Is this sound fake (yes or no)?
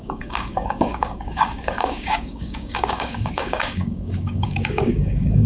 yes